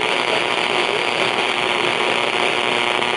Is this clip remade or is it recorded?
recorded